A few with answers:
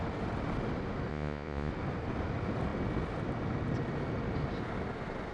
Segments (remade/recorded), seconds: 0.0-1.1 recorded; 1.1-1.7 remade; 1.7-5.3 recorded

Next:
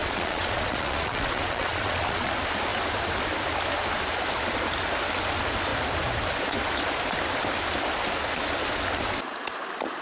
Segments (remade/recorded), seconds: 0.0-2.3 remade; 2.3-10.0 recorded

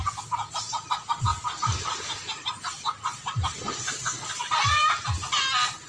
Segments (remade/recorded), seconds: 0.0-5.9 recorded